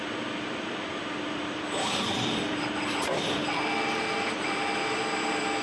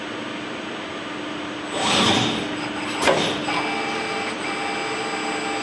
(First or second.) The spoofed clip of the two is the first